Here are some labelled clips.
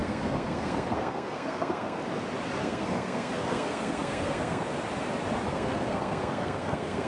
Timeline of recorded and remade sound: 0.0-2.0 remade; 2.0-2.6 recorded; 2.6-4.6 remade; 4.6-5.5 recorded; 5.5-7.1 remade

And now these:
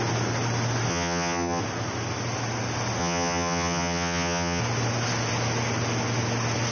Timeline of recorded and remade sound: 0.0-0.9 recorded; 0.9-1.6 remade; 1.6-3.0 recorded; 3.0-4.6 remade; 4.6-6.7 recorded

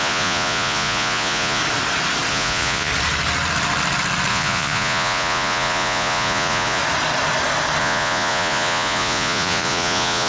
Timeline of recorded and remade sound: 0.0-1.6 remade; 1.6-2.3 recorded; 2.3-2.9 remade; 2.9-4.3 recorded; 4.3-6.8 remade; 6.8-7.8 recorded; 7.8-10.3 remade

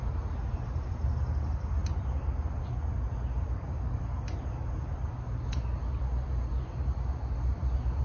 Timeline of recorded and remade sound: 0.0-8.0 recorded